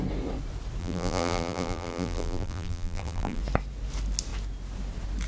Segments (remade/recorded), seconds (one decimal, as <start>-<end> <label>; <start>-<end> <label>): 0.0-0.8 recorded; 0.8-3.4 remade; 3.4-5.3 recorded